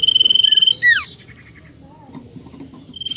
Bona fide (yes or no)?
yes